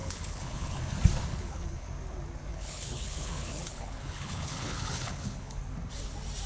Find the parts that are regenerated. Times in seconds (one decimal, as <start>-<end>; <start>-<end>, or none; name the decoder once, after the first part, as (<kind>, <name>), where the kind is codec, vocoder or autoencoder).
0.0-0.8 (codec, HILCodec); 1.3-1.9; 2.5-5.6